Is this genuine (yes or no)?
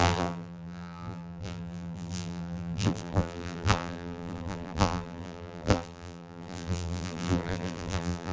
no